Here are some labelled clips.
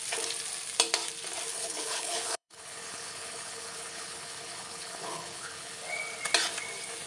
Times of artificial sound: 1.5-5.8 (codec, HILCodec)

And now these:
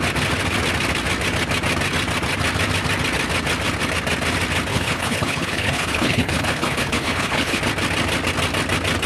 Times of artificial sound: 4.7-7.6 (codec, HILCodec)